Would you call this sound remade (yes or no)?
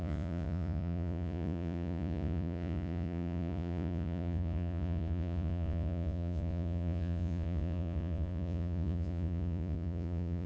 yes